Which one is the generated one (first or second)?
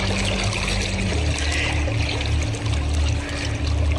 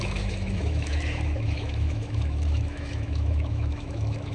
second